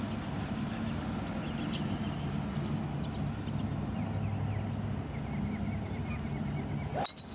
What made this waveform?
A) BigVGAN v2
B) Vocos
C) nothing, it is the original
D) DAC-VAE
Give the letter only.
C